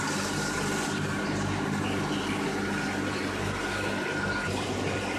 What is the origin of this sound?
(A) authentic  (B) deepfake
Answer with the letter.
A